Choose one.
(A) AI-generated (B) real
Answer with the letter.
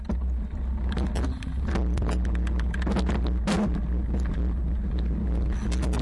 B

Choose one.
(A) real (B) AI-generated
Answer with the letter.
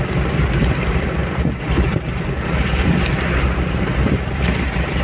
B